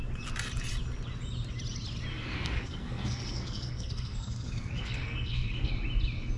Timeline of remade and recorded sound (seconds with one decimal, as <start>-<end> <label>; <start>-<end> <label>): 0.0-2.1 recorded; 2.1-5.7 remade; 5.7-6.4 recorded